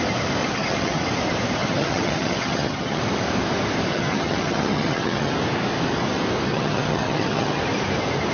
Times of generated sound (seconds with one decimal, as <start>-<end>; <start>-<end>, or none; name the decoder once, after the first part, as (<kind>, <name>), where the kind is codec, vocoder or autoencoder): 0.4-1.0 (vocoder, HiFi-GAN); 1.6-3.0; 3.9-5.3; 6.5-7.6